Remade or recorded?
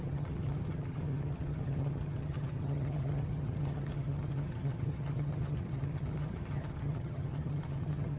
remade